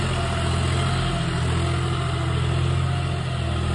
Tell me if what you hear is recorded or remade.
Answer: recorded